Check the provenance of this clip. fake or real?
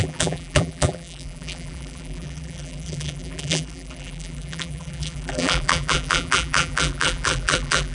fake